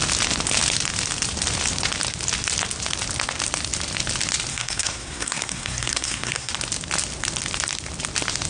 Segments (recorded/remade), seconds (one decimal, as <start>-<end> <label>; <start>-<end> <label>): 0.0-4.5 recorded; 4.5-6.5 remade; 6.5-8.5 recorded